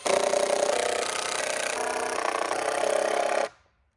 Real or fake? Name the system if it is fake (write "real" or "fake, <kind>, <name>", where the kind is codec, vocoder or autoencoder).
real